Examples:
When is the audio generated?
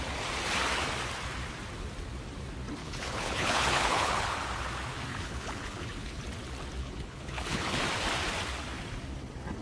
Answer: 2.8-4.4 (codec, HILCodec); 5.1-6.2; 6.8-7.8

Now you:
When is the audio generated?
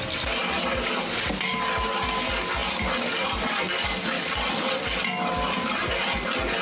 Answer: none